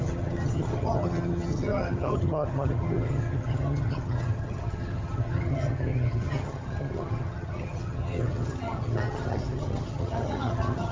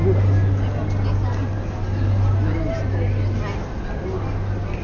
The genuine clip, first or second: second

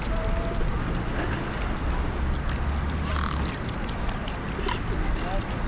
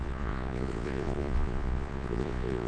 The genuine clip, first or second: first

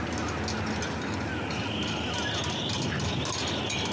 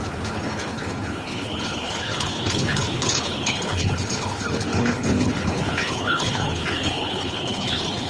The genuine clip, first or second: first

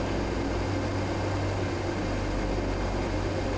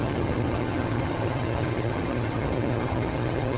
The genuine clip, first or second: first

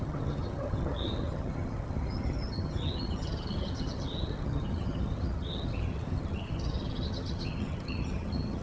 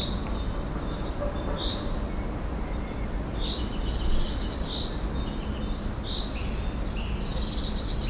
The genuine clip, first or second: second